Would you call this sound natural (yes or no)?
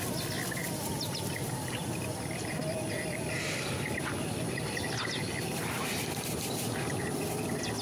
no